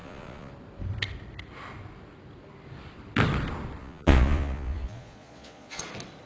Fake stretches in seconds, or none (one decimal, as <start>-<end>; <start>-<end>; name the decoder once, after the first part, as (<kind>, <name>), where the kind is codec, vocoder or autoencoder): 0.0-0.5 (vocoder, Vocos); 3.8-5.8